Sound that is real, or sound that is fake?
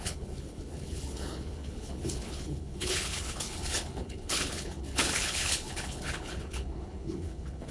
fake